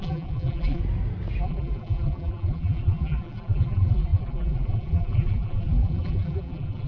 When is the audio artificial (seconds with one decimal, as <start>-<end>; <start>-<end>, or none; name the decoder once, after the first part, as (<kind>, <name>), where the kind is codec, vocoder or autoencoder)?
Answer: 0.0-0.8 (vocoder, BigVGAN v2); 1.4-6.9